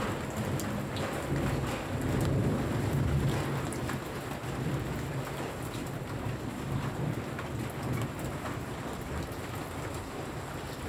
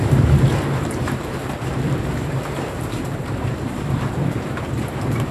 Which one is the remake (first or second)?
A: second